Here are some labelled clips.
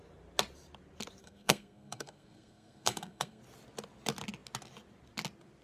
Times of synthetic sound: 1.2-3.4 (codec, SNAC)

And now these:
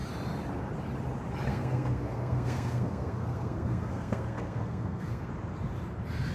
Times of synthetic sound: 1.5-5.3 (codec, SNAC)